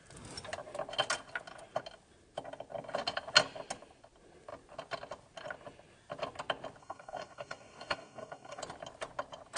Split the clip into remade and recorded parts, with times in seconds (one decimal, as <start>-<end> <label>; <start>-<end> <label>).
0.0-6.8 recorded; 6.8-8.6 remade; 8.6-9.6 recorded